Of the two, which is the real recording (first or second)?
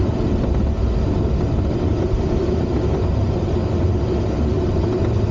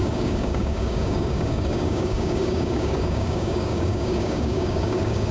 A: first